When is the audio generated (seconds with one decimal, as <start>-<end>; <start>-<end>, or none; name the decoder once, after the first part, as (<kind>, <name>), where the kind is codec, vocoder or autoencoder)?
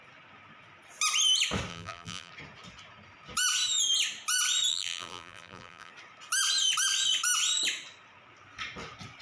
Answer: 1.7-2.3 (vocoder, BigVGAN v2); 4.7-5.9